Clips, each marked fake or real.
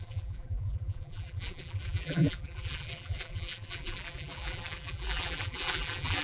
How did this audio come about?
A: fake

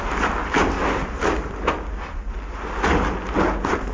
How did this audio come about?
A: real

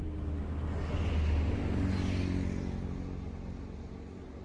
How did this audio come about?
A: real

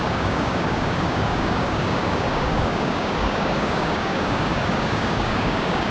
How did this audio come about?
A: fake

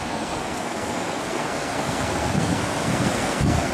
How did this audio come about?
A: fake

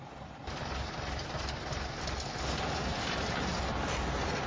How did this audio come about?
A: real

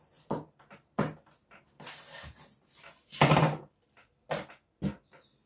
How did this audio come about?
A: real